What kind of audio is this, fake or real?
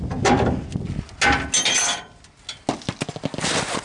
real